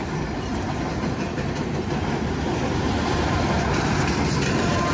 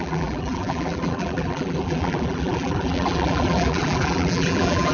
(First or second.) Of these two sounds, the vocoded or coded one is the second